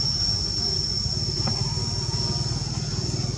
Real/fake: real